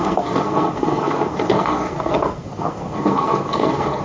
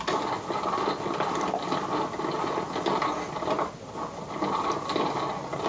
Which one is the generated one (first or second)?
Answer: first